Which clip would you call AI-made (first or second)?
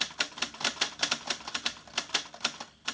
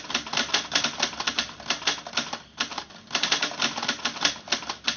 first